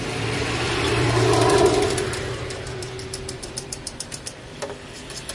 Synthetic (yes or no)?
yes